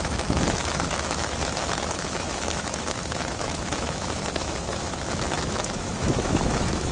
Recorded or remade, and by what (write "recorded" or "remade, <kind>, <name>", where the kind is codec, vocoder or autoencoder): remade, autoencoder, DAC-VAE